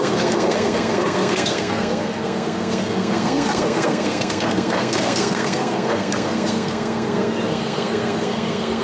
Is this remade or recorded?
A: remade